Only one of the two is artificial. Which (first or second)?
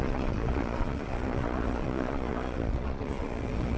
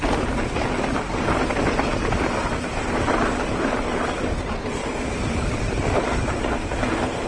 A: first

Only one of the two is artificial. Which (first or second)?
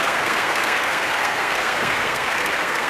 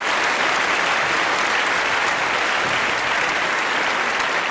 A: first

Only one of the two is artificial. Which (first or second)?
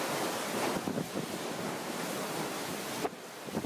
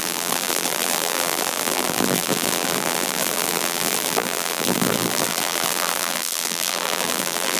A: second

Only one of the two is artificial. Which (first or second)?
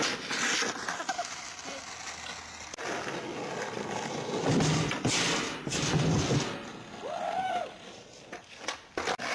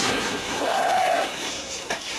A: second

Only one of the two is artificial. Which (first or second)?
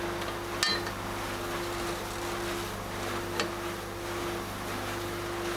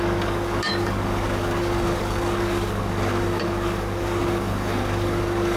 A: second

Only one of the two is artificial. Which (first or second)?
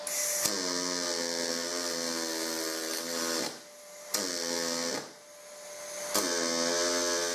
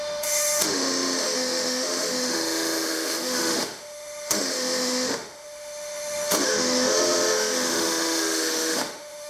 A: second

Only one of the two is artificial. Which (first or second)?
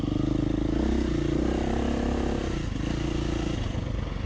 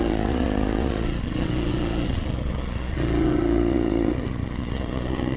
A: second